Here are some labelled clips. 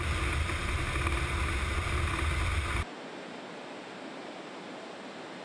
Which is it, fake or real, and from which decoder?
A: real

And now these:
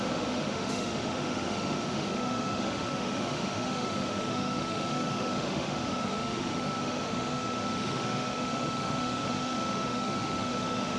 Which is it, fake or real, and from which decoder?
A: fake, autoencoder, DAC-VAE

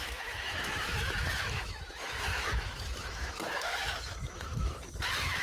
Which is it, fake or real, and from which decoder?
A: fake, autoencoder, DAC-VAE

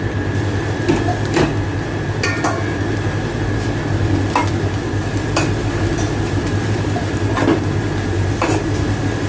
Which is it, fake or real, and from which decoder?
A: real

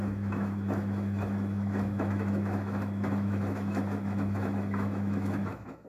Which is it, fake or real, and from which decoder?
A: fake, autoencoder, DAC-VAE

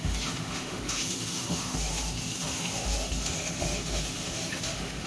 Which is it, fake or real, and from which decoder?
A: fake, autoencoder, DAC-VAE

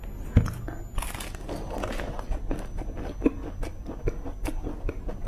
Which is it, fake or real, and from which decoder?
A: real